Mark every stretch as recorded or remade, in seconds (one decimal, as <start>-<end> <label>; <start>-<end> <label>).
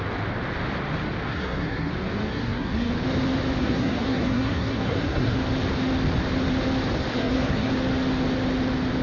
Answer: 0.0-1.3 recorded; 1.3-1.9 remade; 1.9-2.3 recorded; 2.3-2.9 remade; 2.9-3.6 recorded; 3.6-5.4 remade; 5.4-7.1 recorded; 7.1-7.7 remade; 7.7-9.0 recorded